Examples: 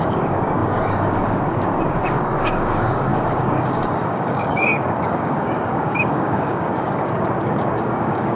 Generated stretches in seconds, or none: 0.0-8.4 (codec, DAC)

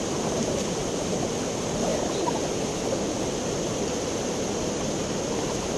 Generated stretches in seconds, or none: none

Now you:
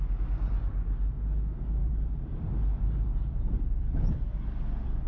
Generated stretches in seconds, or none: 1.8-2.5 (vocoder, BigVGAN v2); 3.3-5.1

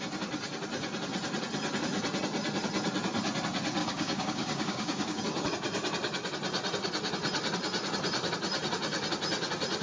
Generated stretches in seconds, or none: 3.8-5.2 (codec, DAC)

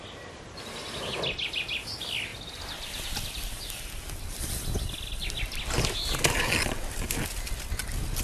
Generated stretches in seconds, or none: none

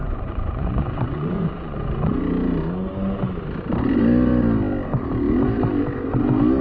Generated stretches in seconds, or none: 0.0-2.2 (vocoder, Vocos)

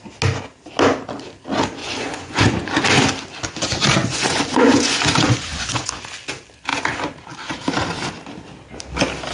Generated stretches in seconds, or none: 1.8-2.7 (vocoder, Vocos); 4.0-6.0

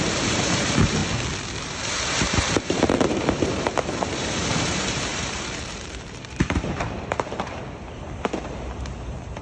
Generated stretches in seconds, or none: 0.0-1.0 (vocoder, BigVGAN v2); 1.6-9.4